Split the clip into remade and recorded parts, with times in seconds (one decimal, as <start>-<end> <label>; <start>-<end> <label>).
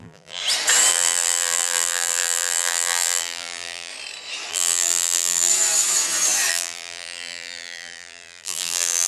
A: 0.0-0.4 remade; 0.4-0.9 recorded; 0.9-3.9 remade; 3.9-4.5 recorded; 4.5-5.5 remade; 5.5-6.5 recorded; 6.5-9.1 remade